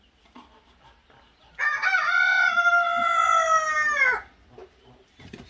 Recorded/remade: recorded